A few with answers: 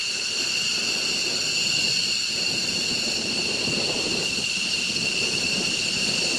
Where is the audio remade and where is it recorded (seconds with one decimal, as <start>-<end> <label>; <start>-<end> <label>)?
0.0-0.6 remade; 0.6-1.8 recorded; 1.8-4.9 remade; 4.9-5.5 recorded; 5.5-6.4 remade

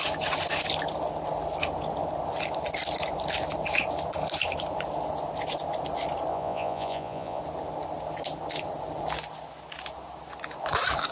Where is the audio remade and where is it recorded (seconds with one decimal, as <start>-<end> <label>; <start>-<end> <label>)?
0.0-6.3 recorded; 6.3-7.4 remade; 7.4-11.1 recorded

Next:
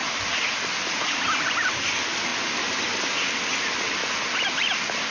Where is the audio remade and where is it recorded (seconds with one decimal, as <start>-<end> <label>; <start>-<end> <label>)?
0.0-5.1 recorded

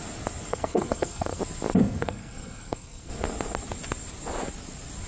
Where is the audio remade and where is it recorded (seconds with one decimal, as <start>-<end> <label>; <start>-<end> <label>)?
0.0-0.5 recorded; 0.5-1.4 remade; 1.4-1.8 recorded; 1.8-3.1 remade; 3.1-5.1 recorded